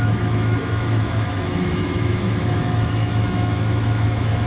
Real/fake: fake